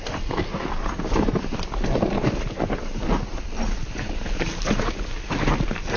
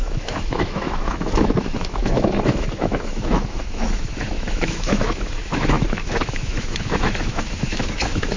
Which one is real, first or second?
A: first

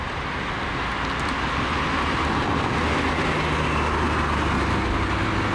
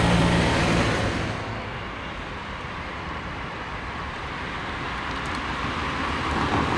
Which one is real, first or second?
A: first